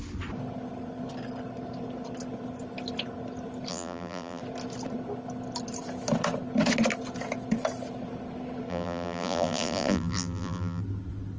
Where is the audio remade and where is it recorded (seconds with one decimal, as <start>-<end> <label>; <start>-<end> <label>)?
0.0-3.7 recorded; 3.7-4.4 remade; 4.4-8.7 recorded; 8.7-10.8 remade; 10.8-11.4 recorded